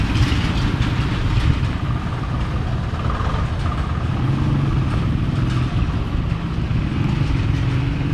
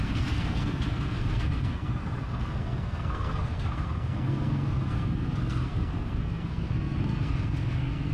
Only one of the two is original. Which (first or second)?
first